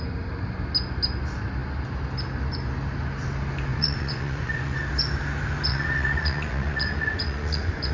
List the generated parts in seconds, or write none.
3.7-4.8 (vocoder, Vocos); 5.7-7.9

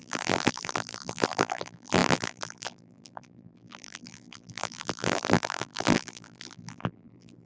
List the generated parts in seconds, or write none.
0.0-7.5 (vocoder, BigVGAN v2)

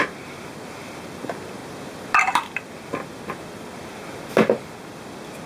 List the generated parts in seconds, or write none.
0.0-5.5 (vocoder, BigVGAN v2)

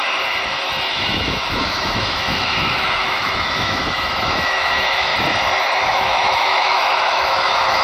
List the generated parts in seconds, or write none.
0.9-5.1 (autoencoder, DAC-VAE); 5.8-7.8

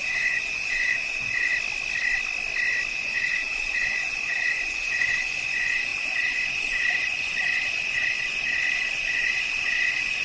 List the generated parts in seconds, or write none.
0.0-1.5 (vocoder, Vocos); 2.9-10.2

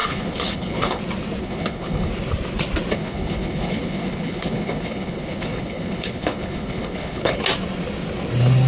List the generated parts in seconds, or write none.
0.0-1.0 (codec, HILCodec); 1.4-2.1; 2.9-7.4

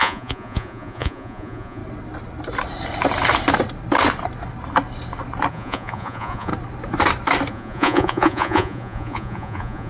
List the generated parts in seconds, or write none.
0.0-1.8 (vocoder, Vocos); 5.5-6.5; 7.5-9.9

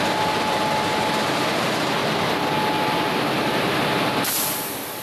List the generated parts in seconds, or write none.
none